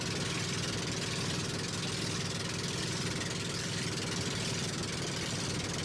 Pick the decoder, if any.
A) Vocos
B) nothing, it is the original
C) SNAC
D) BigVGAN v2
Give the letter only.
B